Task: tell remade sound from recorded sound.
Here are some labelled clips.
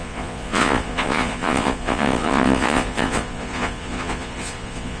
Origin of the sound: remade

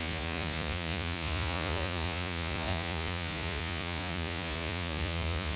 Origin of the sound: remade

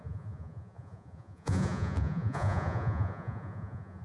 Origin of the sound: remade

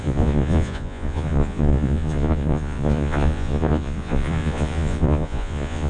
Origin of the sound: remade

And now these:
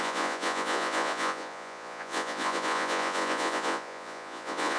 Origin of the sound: remade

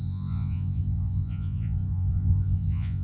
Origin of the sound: remade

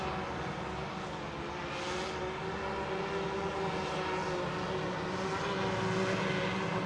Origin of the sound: recorded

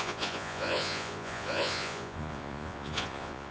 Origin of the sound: remade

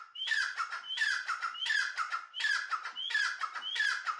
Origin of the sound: recorded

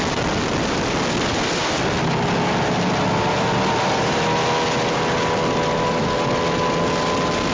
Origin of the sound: recorded